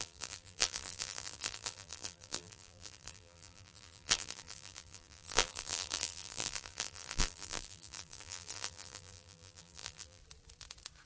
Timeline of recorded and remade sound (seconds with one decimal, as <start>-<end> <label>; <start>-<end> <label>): 0.0-10.2 remade; 10.2-11.1 recorded